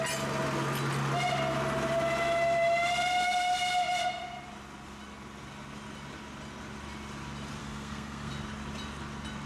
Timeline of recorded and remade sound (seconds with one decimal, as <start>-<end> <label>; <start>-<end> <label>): 0.0-7.6 recorded; 7.6-8.3 remade; 8.3-9.5 recorded